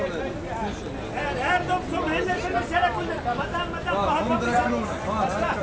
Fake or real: real